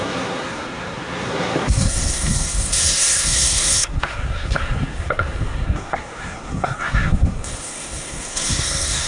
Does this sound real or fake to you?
fake